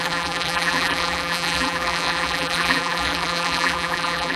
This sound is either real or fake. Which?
fake